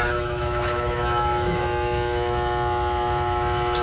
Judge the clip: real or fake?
fake